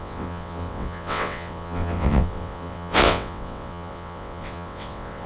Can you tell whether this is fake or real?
fake